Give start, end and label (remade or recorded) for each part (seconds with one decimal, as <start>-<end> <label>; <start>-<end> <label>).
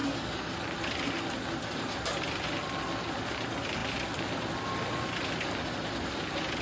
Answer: 0.0-0.5 remade; 0.5-6.6 recorded